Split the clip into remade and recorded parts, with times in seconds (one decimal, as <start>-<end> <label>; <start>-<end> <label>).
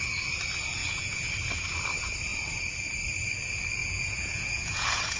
0.0-0.8 recorded; 0.8-1.3 remade; 1.3-3.8 recorded; 3.8-5.2 remade